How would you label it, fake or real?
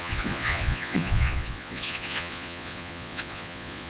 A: fake